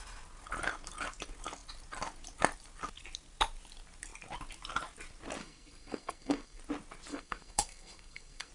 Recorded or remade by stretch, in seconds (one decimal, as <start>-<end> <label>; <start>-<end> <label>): 0.0-5.4 recorded; 5.4-6.6 remade; 6.6-7.1 recorded; 7.1-8.5 remade